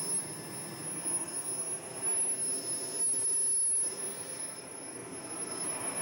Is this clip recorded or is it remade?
recorded